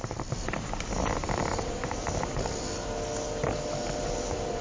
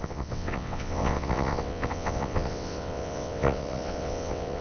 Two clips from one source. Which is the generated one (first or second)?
second